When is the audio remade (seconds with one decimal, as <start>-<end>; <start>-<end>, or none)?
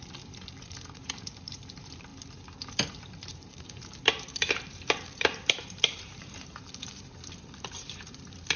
0.0-2.1; 2.9-8.6